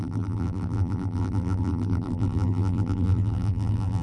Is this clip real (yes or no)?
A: no